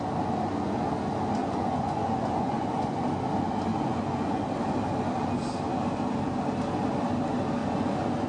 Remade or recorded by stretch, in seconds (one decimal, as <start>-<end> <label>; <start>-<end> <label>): 0.0-1.4 recorded; 1.4-3.0 remade; 3.0-3.7 recorded; 3.7-4.4 remade; 4.4-7.6 recorded; 7.6-8.3 remade